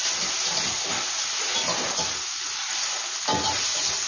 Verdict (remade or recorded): recorded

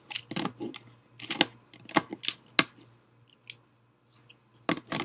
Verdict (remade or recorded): recorded